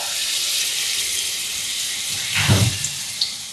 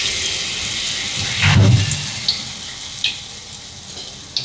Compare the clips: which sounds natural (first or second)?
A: second